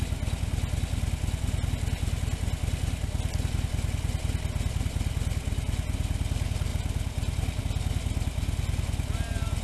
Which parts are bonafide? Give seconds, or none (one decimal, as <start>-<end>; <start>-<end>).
0.0-9.6